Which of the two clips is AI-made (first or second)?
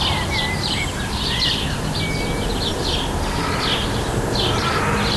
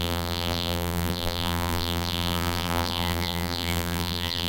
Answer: second